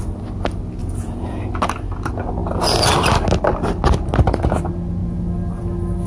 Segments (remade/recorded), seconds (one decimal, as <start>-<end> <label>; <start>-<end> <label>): 0.0-0.8 recorded; 0.8-1.5 remade; 1.5-6.1 recorded